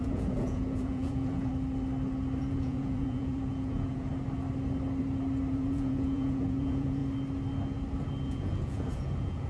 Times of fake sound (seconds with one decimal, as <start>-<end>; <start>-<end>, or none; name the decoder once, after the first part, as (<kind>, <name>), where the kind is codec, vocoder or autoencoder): 0.0-1.5 (vocoder, Vocos); 2.4-4.1; 5.5-7.0; 8.1-9.5